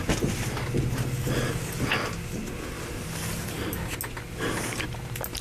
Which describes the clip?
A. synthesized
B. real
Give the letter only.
B